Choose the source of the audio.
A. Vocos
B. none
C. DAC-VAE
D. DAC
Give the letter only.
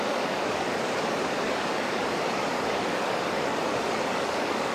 D